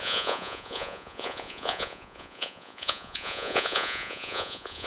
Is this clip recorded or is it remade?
remade